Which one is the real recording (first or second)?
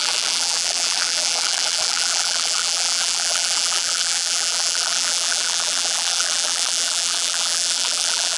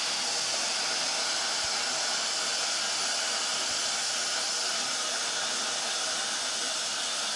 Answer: second